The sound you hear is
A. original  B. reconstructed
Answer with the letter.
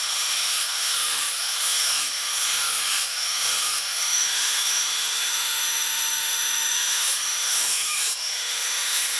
B